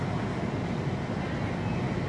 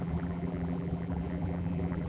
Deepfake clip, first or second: second